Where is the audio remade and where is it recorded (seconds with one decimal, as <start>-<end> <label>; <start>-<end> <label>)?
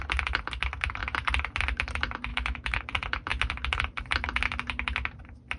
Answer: 0.0-2.3 recorded; 2.3-2.8 remade; 2.8-5.6 recorded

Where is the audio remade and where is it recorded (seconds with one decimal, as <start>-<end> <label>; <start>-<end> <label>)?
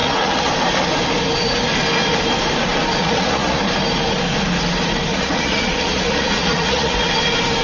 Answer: 0.0-0.5 remade; 0.5-3.0 recorded; 3.0-3.6 remade; 3.6-5.1 recorded; 5.1-7.1 remade; 7.1-7.6 recorded